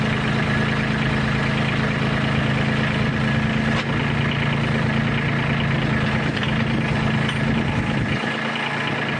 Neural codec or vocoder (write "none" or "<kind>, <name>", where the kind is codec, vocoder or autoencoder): none